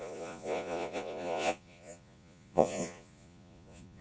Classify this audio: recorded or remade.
remade